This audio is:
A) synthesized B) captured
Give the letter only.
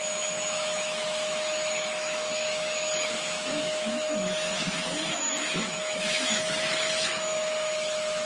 A